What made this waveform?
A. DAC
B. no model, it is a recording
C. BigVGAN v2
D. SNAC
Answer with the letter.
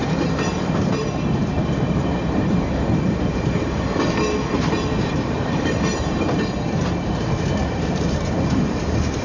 C